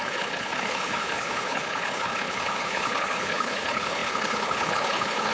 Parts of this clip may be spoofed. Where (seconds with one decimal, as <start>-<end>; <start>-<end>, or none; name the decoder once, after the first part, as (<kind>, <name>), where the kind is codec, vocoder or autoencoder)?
0.0-5.3 (codec, HILCodec)